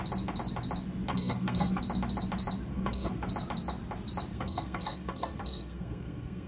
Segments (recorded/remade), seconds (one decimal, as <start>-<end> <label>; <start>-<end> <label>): 0.0-1.1 recorded; 1.1-1.8 remade; 1.8-2.7 recorded; 2.7-3.3 remade; 3.3-4.3 recorded; 4.3-6.5 remade